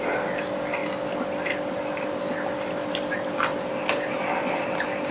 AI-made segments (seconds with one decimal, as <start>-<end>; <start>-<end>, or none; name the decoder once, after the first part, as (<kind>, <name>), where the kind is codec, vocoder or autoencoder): none